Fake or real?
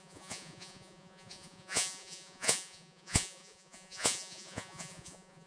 fake